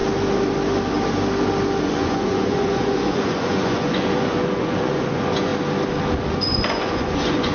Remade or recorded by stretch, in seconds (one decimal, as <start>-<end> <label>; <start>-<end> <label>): 0.0-1.8 recorded; 1.8-5.5 remade; 5.5-6.3 recorded; 6.3-7.5 remade